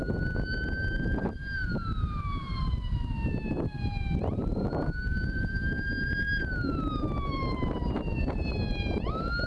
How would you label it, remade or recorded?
remade